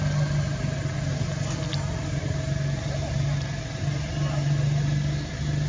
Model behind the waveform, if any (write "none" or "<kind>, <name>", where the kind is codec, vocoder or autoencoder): none